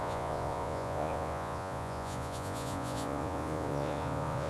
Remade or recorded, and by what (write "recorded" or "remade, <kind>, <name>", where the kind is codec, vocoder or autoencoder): remade, vocoder, Vocos